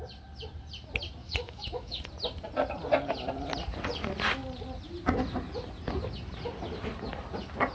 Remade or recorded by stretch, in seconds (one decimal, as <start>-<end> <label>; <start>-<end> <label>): 0.0-1.2 recorded; 1.2-2.0 remade; 2.0-7.7 recorded